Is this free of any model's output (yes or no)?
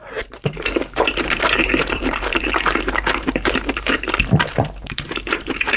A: no